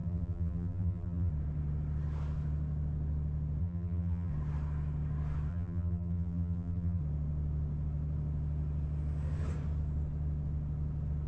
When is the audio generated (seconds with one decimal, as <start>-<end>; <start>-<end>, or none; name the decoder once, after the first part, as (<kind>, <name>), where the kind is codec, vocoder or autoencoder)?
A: 0.0-1.3 (vocoder, BigVGAN v2); 3.6-4.3; 5.5-7.0